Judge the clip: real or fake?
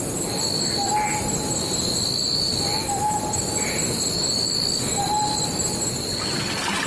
real